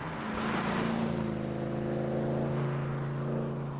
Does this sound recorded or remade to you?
recorded